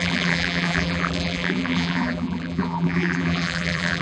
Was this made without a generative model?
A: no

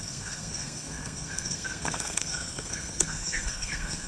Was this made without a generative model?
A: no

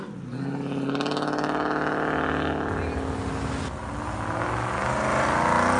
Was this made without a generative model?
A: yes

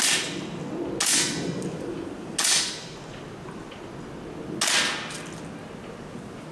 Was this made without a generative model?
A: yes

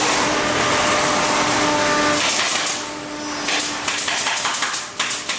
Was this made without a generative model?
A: yes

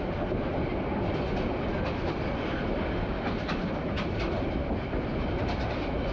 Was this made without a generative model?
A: yes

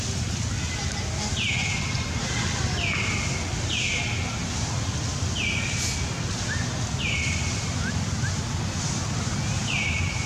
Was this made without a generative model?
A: yes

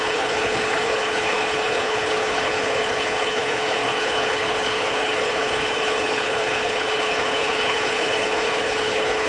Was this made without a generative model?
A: no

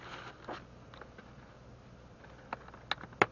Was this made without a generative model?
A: yes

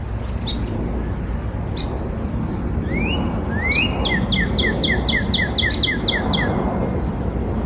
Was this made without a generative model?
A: yes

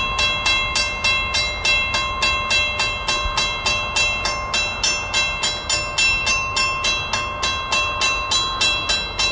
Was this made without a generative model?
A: yes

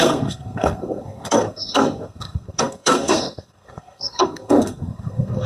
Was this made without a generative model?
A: no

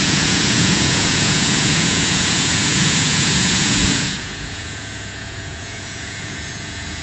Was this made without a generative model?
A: no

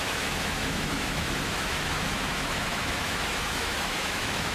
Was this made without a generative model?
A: no